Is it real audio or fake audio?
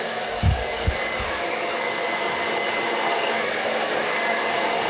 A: fake